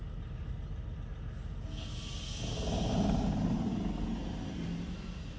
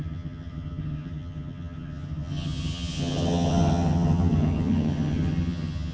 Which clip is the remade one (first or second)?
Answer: second